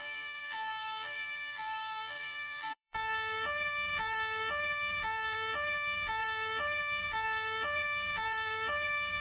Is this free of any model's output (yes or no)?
no